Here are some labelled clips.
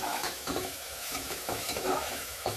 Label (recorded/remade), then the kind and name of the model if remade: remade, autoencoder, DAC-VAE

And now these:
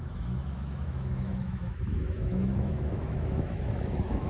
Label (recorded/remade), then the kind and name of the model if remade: remade, autoencoder, DAC-VAE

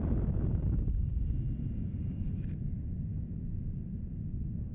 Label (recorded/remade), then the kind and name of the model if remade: recorded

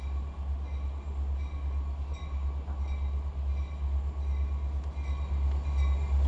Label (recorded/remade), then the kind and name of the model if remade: recorded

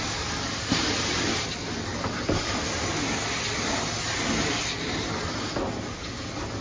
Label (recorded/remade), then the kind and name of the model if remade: recorded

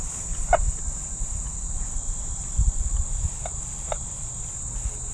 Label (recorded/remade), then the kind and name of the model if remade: recorded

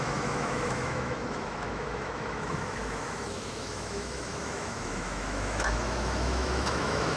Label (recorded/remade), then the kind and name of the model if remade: remade, autoencoder, DAC-VAE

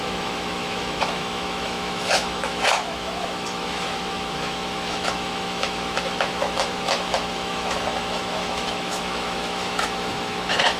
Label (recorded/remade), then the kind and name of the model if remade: remade, autoencoder, DAC-VAE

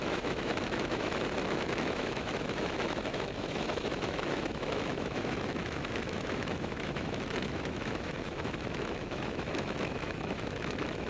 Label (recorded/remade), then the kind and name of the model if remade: remade, autoencoder, DAC-VAE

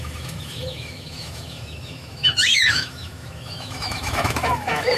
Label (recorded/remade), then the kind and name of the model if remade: remade, autoencoder, DAC-VAE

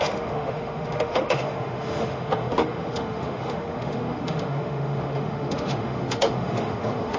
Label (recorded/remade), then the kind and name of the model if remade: remade, autoencoder, DAC-VAE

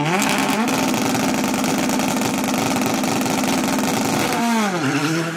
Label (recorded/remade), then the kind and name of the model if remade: recorded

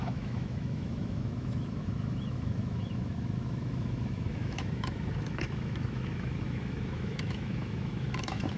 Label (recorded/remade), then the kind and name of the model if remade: remade, autoencoder, DAC-VAE